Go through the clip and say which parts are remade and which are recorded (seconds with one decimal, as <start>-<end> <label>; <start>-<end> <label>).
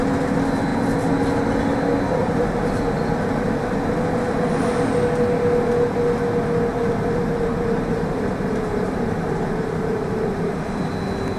0.0-2.2 recorded; 2.2-2.8 remade; 2.8-6.7 recorded; 6.7-10.9 remade; 10.9-11.4 recorded